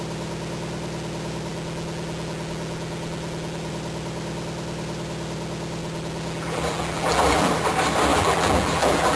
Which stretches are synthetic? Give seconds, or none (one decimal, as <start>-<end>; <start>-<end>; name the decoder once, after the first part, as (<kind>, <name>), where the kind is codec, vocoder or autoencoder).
1.5-3.7 (vocoder, BigVGAN v2); 5.8-7.5; 8.1-9.2